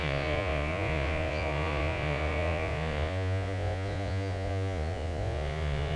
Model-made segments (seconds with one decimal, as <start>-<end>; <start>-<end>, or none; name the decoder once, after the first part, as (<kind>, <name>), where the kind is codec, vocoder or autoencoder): 0.0-6.0 (vocoder, Vocos)